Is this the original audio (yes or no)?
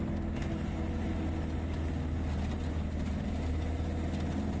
yes